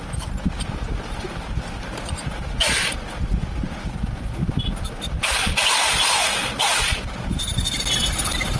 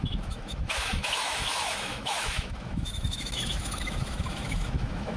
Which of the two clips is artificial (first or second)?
second